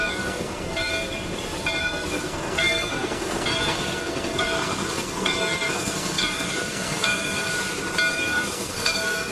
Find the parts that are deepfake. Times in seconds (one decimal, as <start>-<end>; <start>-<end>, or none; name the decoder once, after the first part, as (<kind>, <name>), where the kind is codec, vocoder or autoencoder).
0.0-0.9 (codec, SNAC); 1.8-7.5; 8.1-9.3